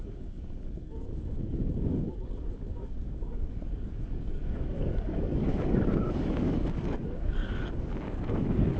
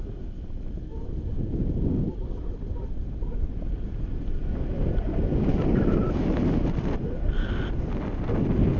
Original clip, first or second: second